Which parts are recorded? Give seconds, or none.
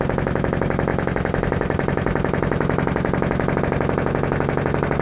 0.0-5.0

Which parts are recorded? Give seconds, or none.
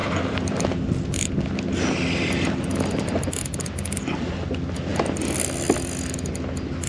0.0-6.9